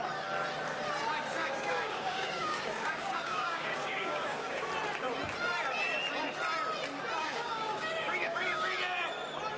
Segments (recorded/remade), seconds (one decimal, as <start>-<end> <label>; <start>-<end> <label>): 0.0-1.4 recorded; 1.4-4.7 remade; 4.7-7.2 recorded; 7.2-8.7 remade; 8.7-9.6 recorded